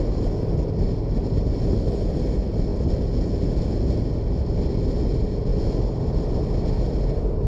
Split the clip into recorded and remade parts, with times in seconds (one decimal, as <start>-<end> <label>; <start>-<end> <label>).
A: 0.0-7.5 recorded

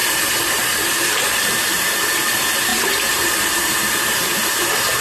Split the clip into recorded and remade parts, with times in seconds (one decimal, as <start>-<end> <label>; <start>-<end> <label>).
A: 0.0-2.1 remade; 2.1-2.7 recorded; 2.7-5.0 remade